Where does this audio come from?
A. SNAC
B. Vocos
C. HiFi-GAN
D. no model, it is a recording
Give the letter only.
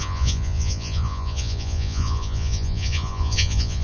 B